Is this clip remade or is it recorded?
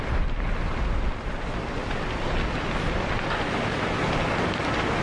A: recorded